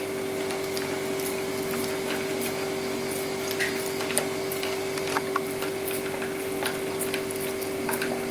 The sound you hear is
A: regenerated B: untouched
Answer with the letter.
B